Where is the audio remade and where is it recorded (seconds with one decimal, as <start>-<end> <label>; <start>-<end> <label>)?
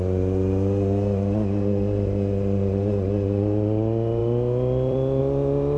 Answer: 0.0-4.2 recorded; 4.2-5.2 remade; 5.2-5.8 recorded